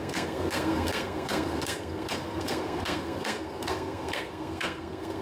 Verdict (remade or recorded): remade